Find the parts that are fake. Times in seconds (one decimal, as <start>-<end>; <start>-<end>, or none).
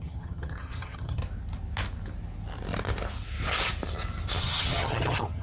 0.0-1.2; 4.4-5.4